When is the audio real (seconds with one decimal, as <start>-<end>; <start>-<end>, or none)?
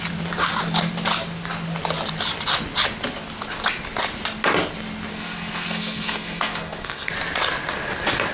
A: 0.0-5.1; 7.1-8.3